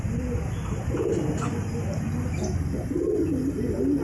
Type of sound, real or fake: real